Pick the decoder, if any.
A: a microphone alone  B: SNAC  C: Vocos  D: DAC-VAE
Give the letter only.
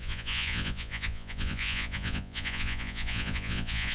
C